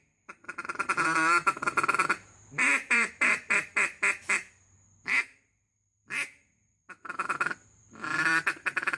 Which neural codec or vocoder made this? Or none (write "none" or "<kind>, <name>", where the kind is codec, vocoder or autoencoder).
vocoder, BigVGAN v2